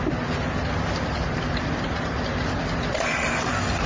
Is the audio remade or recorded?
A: recorded